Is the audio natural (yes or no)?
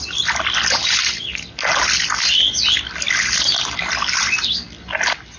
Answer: yes